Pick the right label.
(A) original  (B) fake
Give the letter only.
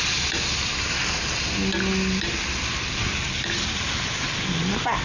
A